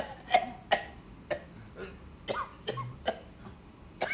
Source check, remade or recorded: recorded